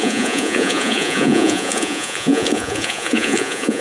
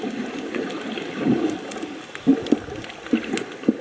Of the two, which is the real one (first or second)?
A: second